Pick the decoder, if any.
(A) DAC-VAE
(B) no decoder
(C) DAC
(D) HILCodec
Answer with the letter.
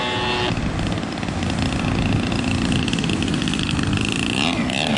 B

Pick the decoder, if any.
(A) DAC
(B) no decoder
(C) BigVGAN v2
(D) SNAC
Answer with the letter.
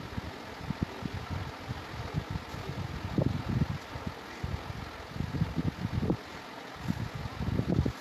B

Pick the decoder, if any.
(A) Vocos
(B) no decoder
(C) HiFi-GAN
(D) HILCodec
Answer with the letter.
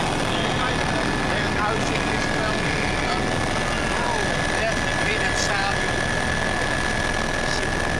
B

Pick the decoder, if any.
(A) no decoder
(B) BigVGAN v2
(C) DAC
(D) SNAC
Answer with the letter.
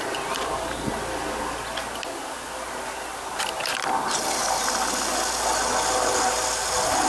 A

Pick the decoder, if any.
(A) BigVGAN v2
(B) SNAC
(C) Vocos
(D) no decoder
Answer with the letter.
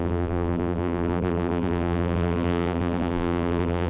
A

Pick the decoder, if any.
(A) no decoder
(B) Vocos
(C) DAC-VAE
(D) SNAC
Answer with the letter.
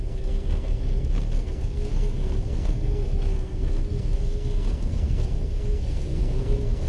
D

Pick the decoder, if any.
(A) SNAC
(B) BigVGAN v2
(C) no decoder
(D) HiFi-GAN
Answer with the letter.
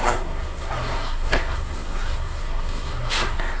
A